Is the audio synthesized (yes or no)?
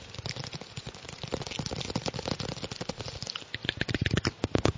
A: no